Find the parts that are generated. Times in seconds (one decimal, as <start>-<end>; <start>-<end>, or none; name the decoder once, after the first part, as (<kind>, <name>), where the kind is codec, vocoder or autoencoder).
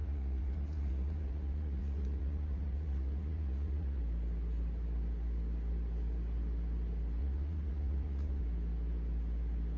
0.0-4.0 (vocoder, Vocos); 7.2-8.4